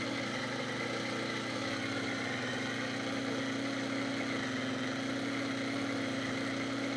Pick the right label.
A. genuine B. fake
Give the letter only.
A